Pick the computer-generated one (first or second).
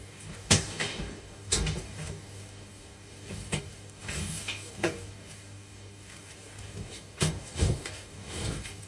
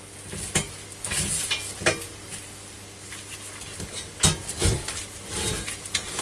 first